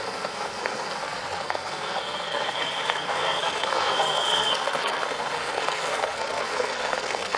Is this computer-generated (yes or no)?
yes